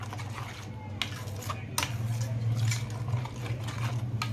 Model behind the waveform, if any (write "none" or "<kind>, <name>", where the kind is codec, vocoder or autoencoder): none